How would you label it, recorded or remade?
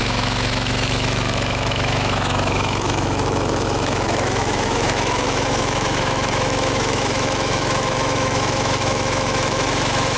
remade